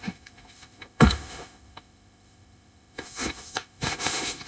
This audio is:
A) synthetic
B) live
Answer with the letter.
A